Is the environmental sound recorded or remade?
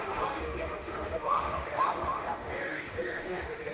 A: remade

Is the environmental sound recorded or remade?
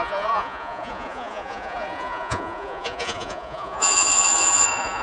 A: remade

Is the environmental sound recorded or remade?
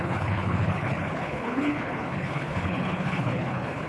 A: remade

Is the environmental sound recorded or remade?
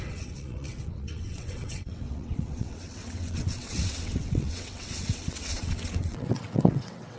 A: remade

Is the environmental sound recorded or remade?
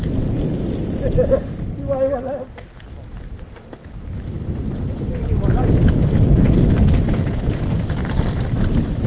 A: recorded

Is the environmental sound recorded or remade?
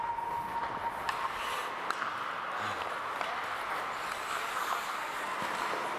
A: recorded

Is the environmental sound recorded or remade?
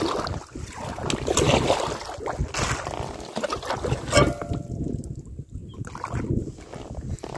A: recorded